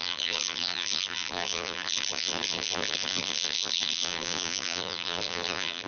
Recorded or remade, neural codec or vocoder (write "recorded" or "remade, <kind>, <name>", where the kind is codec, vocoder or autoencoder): remade, vocoder, BigVGAN v2